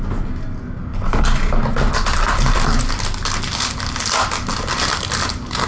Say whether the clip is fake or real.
real